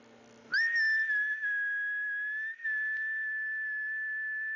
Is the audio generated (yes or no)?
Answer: no